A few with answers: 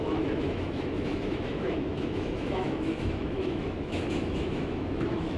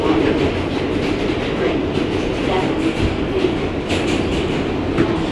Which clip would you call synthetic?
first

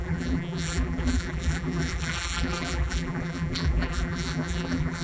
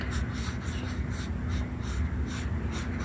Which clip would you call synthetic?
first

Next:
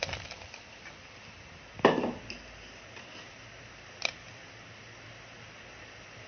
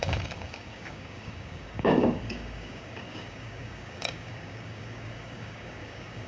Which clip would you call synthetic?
second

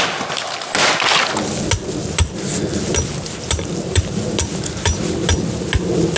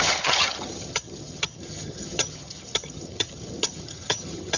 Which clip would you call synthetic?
second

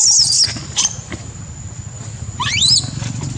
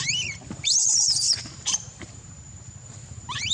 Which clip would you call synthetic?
second